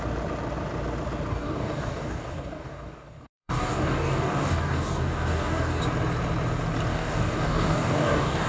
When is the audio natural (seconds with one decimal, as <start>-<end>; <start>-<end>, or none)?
0.0-1.3; 5.8-6.9